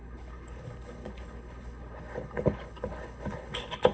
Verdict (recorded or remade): remade